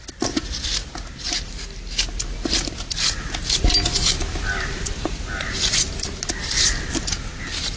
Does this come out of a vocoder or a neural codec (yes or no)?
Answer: no